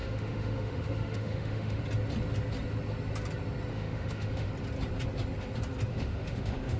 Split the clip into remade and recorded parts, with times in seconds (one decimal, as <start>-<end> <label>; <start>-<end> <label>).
0.0-1.8 remade; 1.8-3.7 recorded; 3.7-4.5 remade; 4.5-5.9 recorded; 5.9-6.8 remade